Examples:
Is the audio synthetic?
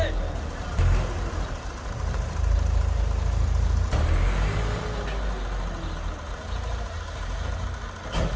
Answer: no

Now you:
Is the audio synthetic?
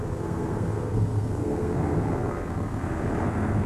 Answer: yes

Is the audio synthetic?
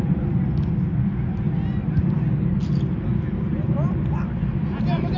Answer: no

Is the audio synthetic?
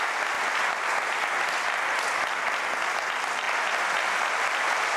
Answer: no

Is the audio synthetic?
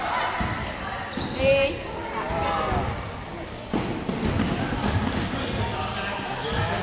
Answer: no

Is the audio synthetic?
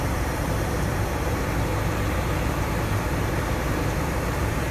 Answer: yes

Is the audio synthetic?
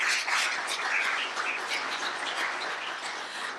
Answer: yes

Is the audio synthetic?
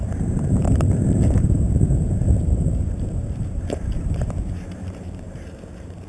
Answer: yes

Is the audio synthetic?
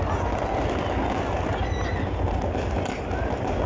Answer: no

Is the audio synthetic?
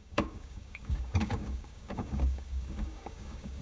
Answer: yes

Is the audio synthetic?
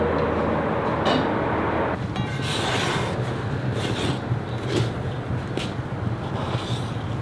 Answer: no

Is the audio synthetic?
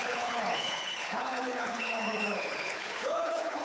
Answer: yes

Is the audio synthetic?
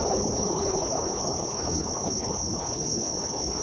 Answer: yes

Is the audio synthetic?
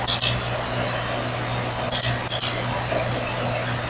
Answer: no